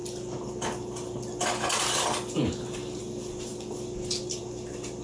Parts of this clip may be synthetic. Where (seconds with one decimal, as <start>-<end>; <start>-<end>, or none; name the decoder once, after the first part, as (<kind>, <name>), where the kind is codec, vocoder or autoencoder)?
none